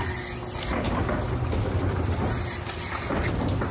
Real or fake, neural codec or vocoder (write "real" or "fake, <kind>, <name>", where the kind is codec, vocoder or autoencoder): real